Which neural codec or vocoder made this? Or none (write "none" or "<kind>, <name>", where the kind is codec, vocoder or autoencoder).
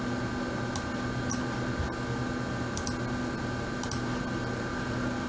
none